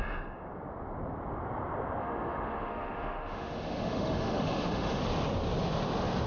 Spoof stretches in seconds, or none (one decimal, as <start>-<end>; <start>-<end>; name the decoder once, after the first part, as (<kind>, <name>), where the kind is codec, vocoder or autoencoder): 2.0-5.0 (autoencoder, DAC-VAE)